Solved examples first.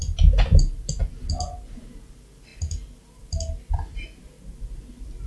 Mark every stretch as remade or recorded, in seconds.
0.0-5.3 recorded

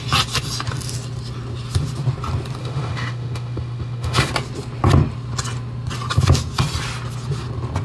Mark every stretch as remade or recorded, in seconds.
0.0-2.6 recorded; 2.6-4.3 remade; 4.3-7.8 recorded

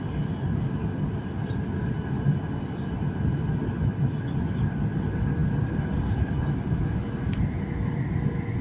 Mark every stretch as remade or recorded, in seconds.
0.0-8.6 recorded

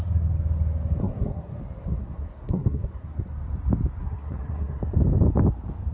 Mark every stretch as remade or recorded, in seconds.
0.0-1.0 recorded; 1.0-1.6 remade; 1.6-2.0 recorded; 2.0-3.2 remade; 3.2-4.0 recorded; 4.0-4.8 remade; 4.8-5.9 recorded

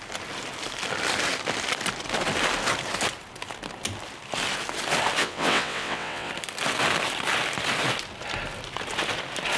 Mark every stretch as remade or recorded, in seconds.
0.0-5.2 recorded; 5.2-6.3 remade; 6.3-9.6 recorded